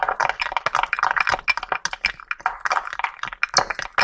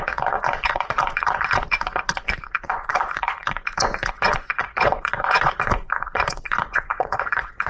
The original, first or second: first